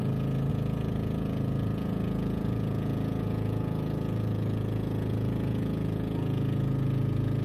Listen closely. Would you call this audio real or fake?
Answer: fake